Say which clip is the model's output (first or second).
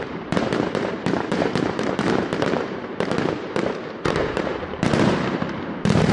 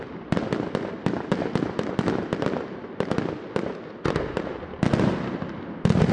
first